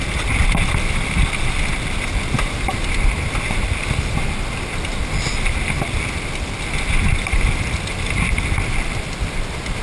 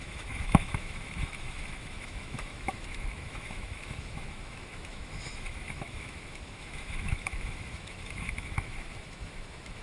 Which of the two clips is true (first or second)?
first